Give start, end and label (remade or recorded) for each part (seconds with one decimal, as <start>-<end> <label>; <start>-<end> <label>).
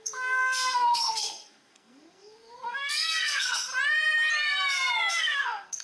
0.0-3.7 remade; 3.7-5.1 recorded; 5.1-5.8 remade